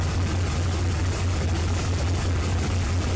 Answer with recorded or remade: recorded